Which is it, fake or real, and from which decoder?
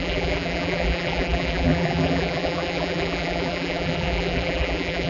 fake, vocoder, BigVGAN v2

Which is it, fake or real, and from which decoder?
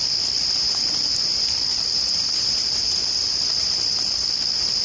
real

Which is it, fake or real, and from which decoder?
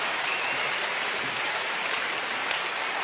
fake, vocoder, BigVGAN v2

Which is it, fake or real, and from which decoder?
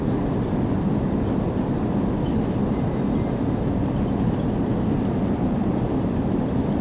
real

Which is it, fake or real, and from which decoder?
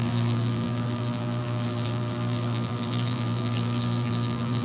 fake, vocoder, BigVGAN v2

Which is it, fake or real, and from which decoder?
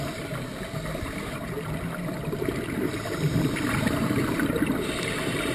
real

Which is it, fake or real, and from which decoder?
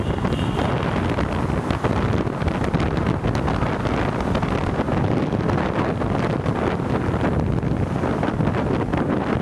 real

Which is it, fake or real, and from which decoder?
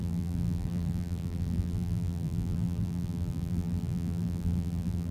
fake, vocoder, BigVGAN v2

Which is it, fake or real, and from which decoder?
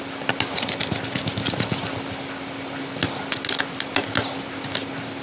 real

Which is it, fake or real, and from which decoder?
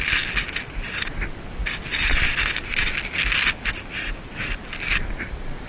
real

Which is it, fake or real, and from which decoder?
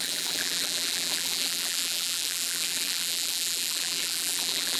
fake, vocoder, BigVGAN v2